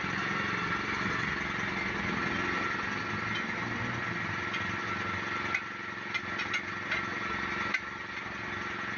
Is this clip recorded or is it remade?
recorded